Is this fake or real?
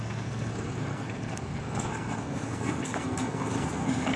fake